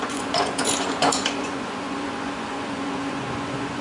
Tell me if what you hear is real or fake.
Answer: fake